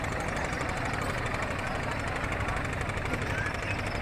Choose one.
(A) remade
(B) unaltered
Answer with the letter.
B